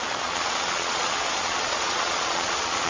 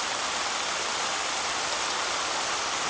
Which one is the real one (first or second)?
second